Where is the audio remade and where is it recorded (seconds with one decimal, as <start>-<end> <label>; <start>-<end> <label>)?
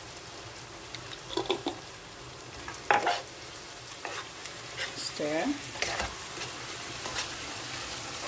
0.0-1.7 recorded; 1.7-2.6 remade; 2.6-4.4 recorded; 4.4-6.6 remade; 6.6-8.3 recorded